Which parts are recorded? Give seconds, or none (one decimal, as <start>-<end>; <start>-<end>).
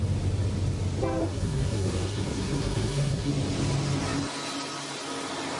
0.0-1.2; 3.3-5.6